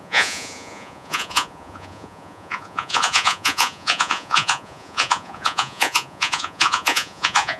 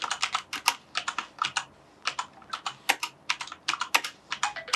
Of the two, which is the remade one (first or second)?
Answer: first